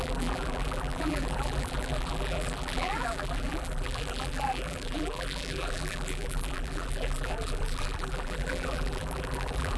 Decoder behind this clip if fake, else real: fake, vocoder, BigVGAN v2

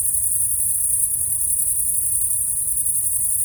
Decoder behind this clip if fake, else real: real